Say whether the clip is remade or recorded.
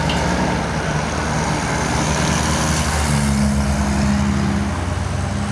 recorded